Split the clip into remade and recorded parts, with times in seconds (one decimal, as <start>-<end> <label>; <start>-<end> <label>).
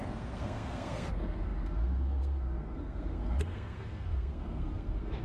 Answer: 0.0-5.2 remade